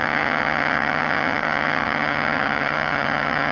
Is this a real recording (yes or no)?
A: no